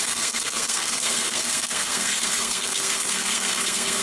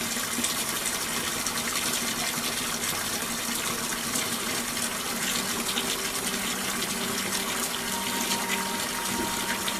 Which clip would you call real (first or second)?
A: second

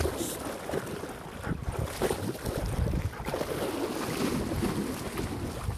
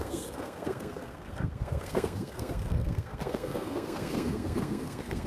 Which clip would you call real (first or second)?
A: first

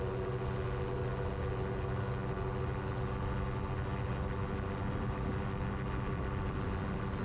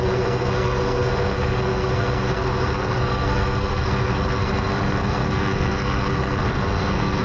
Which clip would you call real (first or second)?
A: first